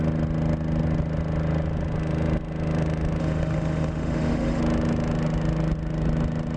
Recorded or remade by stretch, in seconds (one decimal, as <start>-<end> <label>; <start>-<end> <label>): 0.0-3.2 recorded; 3.2-4.6 remade; 4.6-6.6 recorded